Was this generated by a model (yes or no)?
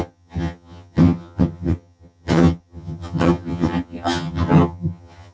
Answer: yes